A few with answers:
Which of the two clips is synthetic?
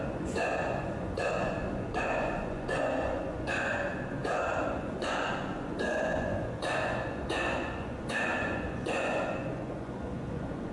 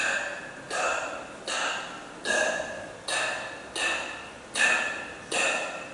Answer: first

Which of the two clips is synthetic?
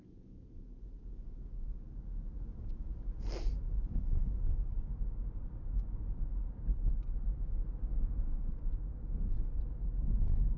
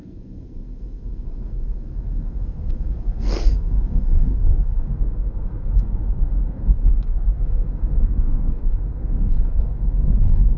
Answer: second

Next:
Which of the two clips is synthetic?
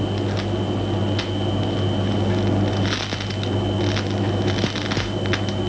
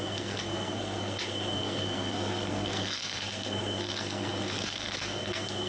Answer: second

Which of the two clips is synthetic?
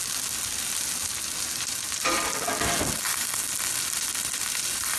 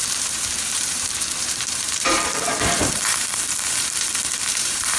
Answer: second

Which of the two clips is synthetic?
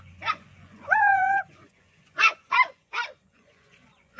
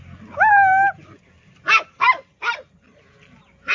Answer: first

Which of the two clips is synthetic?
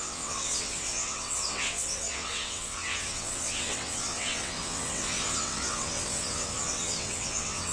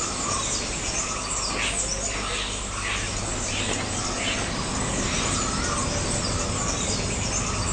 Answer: first